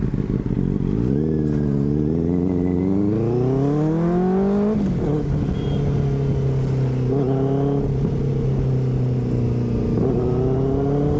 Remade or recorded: recorded